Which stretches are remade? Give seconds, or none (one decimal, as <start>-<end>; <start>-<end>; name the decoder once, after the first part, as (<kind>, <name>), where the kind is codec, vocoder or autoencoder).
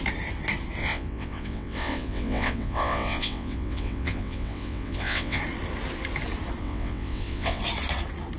0.8-5.4 (vocoder, WaveNeXt); 6.6-7.6